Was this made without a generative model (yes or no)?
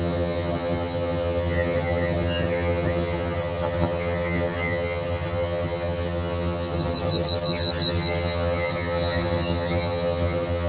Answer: no